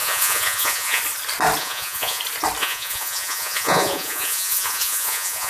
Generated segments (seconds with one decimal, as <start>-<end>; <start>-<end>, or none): 0.0-1.0; 1.6-2.2; 2.6-5.5